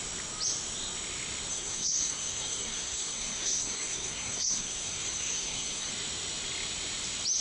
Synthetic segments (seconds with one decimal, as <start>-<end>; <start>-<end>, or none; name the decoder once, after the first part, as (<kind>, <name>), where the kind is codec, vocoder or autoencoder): 1.5-5.9 (codec, SNAC)

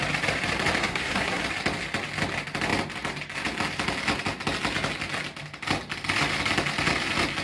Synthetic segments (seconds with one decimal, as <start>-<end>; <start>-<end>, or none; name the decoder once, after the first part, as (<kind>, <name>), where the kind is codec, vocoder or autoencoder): 0.8-1.4 (codec, SNAC)